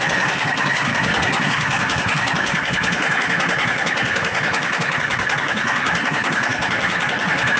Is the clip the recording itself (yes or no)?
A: no